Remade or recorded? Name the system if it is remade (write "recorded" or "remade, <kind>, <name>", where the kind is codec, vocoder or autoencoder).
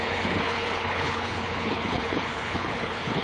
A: remade, codec, HILCodec